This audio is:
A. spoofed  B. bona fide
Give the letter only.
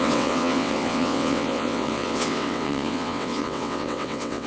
A